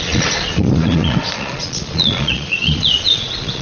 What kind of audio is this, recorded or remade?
remade